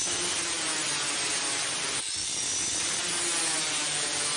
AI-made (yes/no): no